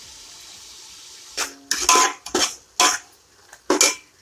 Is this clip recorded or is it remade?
recorded